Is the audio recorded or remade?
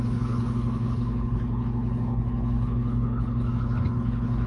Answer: remade